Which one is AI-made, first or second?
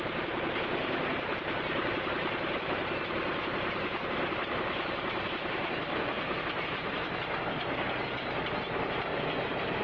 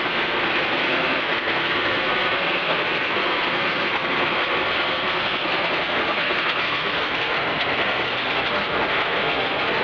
second